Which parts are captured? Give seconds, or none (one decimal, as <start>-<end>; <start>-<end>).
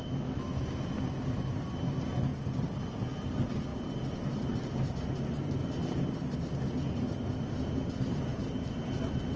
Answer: 0.0-3.7; 9.0-9.4